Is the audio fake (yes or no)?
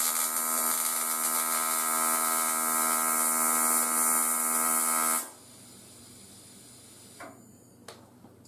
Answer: no